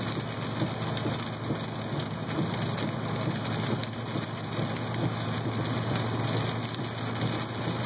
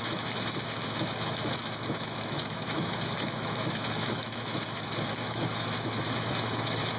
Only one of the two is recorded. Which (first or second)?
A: first